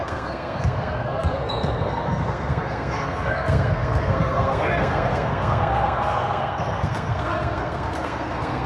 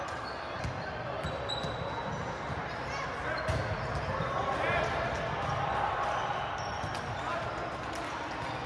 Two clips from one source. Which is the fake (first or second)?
first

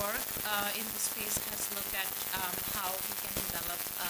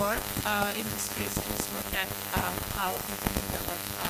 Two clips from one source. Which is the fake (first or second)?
second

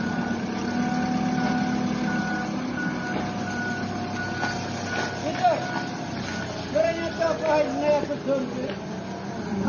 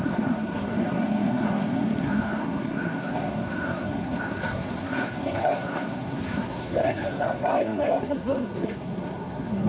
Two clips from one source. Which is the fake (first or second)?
second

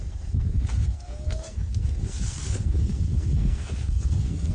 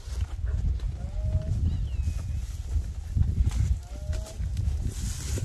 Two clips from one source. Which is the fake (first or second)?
first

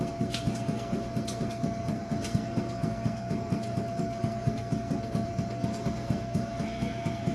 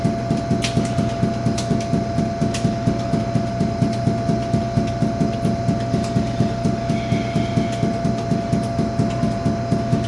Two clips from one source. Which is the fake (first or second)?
first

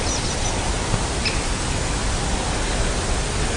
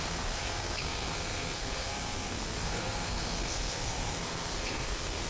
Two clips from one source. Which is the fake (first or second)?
second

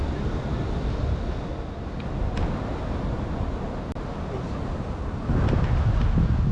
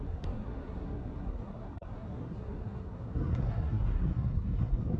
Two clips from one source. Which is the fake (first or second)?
second